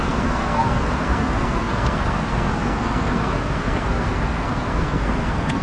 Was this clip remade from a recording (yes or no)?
yes